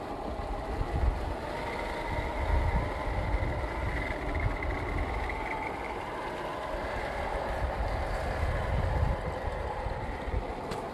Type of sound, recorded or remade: recorded